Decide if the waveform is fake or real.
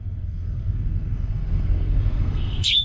fake